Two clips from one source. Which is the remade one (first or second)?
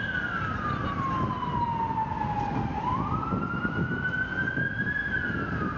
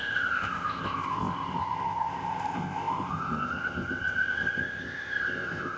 second